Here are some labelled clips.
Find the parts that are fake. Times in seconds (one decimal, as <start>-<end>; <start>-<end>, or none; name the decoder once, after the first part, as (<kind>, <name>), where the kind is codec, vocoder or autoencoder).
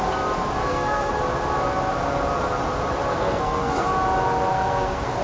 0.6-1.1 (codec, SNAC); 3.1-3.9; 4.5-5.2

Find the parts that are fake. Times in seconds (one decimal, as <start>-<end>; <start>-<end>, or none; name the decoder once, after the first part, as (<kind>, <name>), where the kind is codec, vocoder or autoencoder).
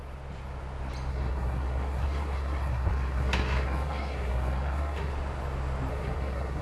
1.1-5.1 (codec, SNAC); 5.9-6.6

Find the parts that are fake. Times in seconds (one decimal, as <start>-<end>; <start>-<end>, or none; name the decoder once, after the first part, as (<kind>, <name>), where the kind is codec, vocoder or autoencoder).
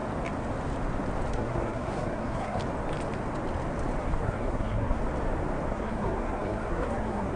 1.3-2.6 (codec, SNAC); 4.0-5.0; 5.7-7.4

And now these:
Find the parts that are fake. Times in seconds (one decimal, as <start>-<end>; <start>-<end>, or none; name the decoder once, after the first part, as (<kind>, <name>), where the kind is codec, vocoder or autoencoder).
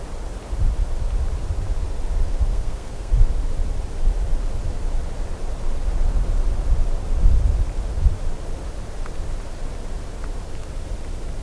2.5-3.1 (codec, SNAC)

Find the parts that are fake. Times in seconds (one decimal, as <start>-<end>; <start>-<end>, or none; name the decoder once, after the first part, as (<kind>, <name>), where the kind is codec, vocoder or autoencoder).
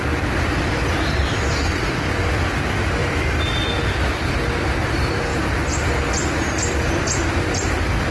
3.0-3.7 (vocoder, BigVGAN v2)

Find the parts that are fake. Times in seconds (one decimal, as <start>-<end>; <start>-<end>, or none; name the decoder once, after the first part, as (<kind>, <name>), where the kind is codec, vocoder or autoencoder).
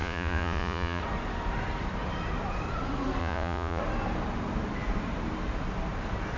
0.0-1.0 (vocoder, Vocos); 3.2-3.8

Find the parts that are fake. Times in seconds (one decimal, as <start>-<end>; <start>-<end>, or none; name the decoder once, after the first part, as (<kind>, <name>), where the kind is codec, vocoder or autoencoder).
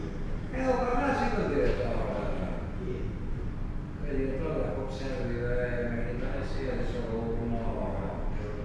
none